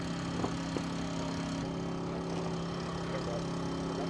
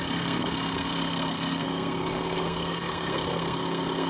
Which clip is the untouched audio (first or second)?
first